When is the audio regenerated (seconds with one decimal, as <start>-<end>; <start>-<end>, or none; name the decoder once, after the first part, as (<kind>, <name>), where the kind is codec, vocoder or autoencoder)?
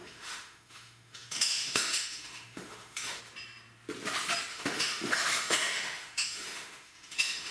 0.0-3.2 (autoencoder, DAC-VAE); 4.5-7.5